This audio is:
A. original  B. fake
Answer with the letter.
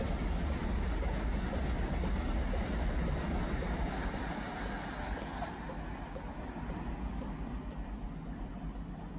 A